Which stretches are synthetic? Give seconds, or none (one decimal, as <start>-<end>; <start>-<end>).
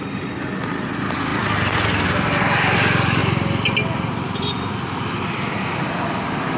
none